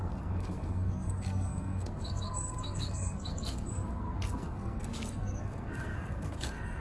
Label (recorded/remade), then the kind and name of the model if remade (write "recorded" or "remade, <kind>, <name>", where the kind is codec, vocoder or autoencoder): remade, codec, SNAC